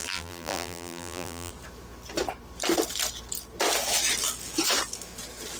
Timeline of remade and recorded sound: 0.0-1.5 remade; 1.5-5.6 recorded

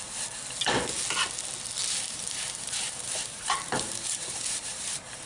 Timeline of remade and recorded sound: 0.0-1.8 recorded; 1.8-5.3 remade